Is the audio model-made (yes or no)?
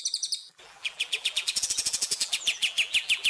yes